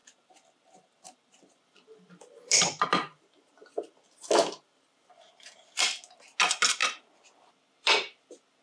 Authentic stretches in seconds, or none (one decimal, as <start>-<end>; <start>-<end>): 5.1-6.8